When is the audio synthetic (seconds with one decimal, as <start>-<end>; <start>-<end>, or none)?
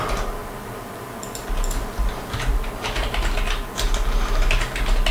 none